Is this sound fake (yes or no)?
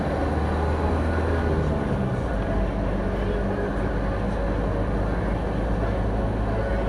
no